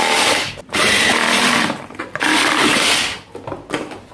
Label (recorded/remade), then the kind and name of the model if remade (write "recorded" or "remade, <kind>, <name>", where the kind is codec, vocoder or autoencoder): recorded